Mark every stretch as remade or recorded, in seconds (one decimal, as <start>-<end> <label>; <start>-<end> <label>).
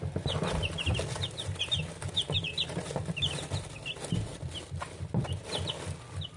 0.0-4.3 recorded; 4.3-5.7 remade; 5.7-6.4 recorded